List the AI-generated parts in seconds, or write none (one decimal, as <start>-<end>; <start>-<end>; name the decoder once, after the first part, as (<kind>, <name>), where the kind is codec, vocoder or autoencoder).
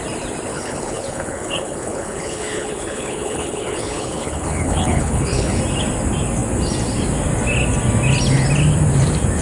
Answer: 0.5-5.6 (codec, HILCodec)